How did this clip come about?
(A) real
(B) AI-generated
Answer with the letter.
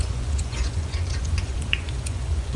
B